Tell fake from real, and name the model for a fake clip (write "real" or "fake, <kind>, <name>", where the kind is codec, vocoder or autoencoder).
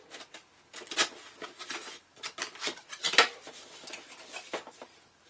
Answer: real